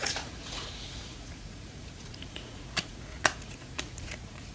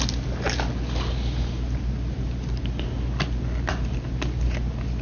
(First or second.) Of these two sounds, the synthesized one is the first